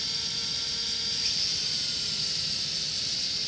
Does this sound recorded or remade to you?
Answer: recorded